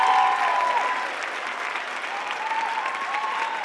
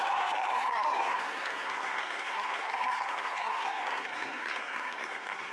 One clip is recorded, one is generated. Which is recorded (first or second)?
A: first